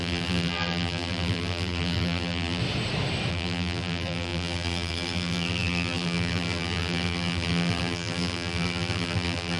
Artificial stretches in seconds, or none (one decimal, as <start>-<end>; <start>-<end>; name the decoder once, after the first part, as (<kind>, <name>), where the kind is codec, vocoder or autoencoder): 0.0-2.6 (vocoder, BigVGAN v2); 3.3-9.6